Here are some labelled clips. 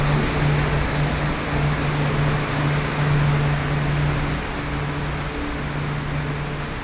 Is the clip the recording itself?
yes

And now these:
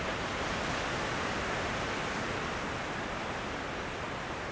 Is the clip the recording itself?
yes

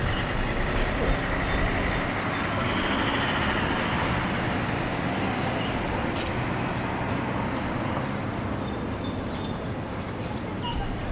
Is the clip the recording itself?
yes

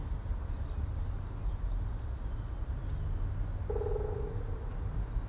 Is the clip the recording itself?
yes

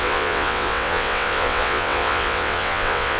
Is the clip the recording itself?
no